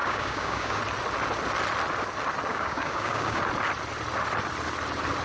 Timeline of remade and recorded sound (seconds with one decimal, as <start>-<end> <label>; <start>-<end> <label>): 0.0-0.8 remade; 0.8-2.5 recorded; 2.5-3.4 remade; 3.4-5.2 recorded